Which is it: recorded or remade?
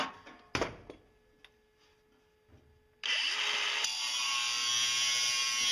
recorded